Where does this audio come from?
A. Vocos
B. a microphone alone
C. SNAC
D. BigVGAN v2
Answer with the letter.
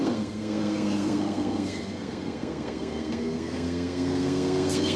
C